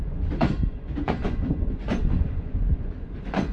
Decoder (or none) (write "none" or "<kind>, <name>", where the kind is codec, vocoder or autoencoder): vocoder, Vocos